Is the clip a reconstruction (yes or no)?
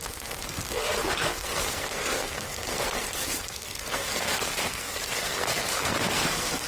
yes